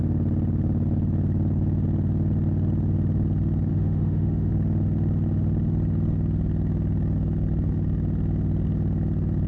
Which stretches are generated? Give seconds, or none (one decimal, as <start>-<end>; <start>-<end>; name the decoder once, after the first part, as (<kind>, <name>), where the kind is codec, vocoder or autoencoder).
3.7-4.5 (autoencoder, DAC-VAE)